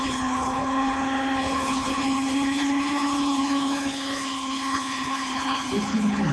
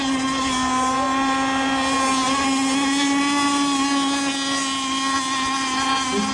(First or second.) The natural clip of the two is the second